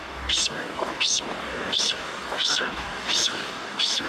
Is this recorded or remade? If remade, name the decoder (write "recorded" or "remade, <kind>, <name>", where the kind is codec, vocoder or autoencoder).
remade, codec, DAC